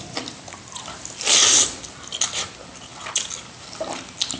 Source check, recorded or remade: recorded